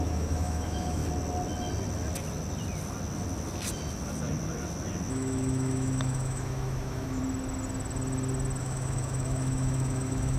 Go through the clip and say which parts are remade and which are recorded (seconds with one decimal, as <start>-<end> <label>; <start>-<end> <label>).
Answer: 0.0-1.0 remade; 1.0-5.1 recorded; 5.1-7.2 remade; 7.2-8.6 recorded; 8.6-10.4 remade